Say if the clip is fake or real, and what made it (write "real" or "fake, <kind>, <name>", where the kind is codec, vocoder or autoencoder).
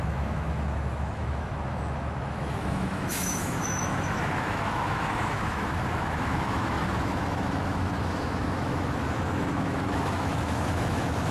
fake, autoencoder, DAC-VAE